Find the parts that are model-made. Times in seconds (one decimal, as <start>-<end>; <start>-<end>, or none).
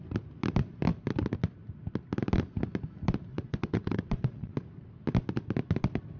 3.3-4.5